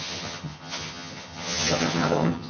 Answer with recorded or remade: remade